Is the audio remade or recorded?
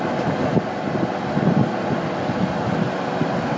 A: recorded